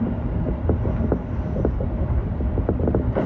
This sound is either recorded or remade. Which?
recorded